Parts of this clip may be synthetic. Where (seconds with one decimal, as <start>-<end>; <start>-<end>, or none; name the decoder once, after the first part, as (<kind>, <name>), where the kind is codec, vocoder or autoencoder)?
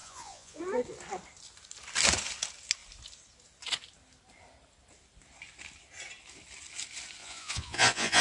0.0-0.6 (vocoder, Vocos); 7.2-8.2